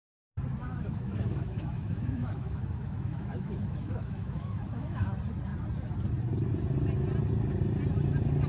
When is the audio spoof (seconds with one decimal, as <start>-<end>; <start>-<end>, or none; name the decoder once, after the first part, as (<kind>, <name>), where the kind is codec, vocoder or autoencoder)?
0.6-5.1 (autoencoder, DAC-VAE)